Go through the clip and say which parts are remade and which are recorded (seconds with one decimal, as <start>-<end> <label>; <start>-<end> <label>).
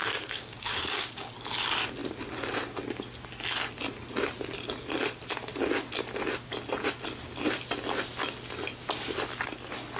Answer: 0.0-1.3 remade; 1.3-10.0 recorded